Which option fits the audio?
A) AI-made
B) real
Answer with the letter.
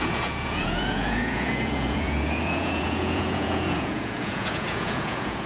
A